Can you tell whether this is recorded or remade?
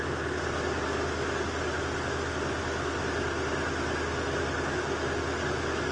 recorded